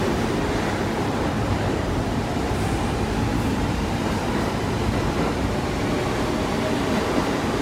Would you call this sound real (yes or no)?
no